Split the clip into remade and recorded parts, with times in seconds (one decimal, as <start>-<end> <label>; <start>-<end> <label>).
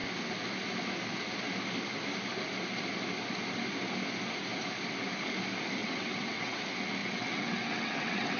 0.0-5.8 recorded; 5.8-6.6 remade; 6.6-7.0 recorded; 7.0-8.4 remade